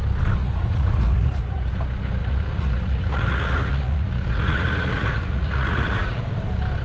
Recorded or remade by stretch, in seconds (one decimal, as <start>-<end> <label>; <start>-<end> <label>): 0.0-0.4 recorded; 0.4-1.7 remade; 1.7-2.2 recorded; 2.2-6.3 remade; 6.3-6.8 recorded